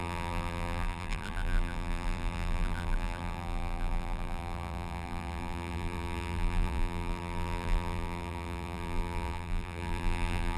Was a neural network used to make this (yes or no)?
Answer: yes